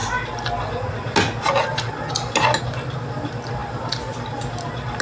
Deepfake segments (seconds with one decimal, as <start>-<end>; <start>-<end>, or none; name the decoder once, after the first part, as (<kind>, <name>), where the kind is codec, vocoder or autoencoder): none